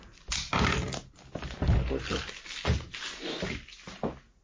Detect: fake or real real